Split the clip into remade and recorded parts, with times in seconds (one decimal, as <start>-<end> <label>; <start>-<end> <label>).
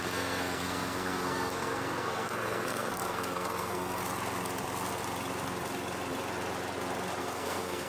0.0-4.0 remade; 4.0-7.2 recorded; 7.2-7.9 remade